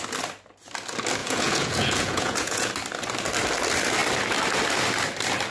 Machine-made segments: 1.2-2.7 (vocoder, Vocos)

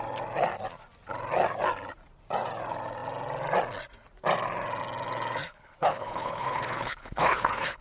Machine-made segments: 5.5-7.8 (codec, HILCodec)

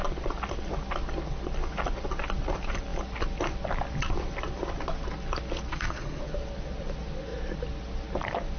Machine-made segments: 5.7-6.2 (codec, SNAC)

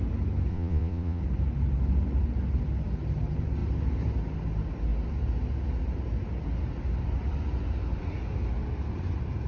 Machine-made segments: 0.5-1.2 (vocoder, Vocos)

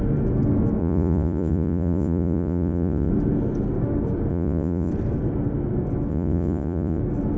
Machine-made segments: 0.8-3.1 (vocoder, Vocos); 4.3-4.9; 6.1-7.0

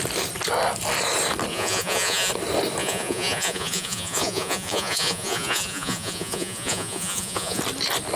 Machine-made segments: 1.5-2.3 (vocoder, Vocos); 2.8-7.6

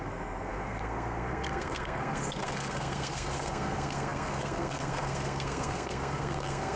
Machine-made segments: 0.0-6.8 (codec, SNAC)